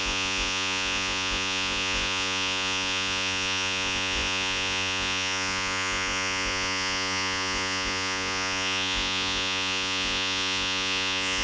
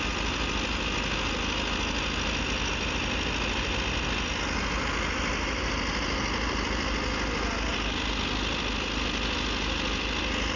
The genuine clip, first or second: second